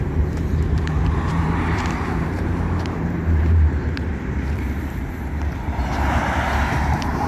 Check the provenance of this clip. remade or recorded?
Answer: remade